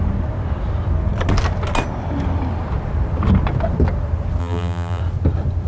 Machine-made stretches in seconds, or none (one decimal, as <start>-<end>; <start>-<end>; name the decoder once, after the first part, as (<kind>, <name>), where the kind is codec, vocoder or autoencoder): 4.4-5.0 (vocoder, BigVGAN v2)

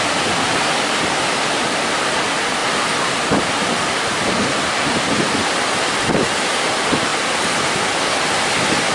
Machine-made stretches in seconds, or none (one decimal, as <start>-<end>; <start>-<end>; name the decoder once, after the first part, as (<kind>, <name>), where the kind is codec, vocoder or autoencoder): 0.5-1.2 (vocoder, BigVGAN v2); 2.6-4.8; 7.1-7.7